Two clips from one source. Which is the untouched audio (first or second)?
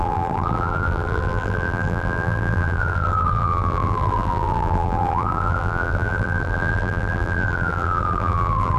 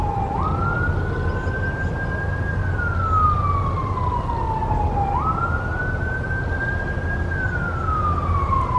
second